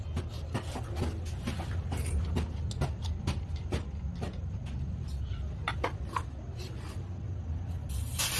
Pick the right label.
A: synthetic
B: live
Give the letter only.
B